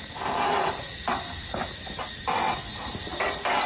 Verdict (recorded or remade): recorded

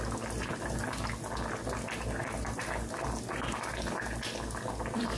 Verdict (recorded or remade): recorded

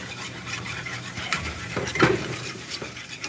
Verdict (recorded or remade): remade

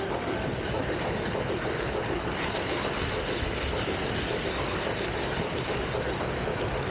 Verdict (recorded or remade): recorded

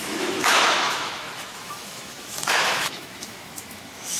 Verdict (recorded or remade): remade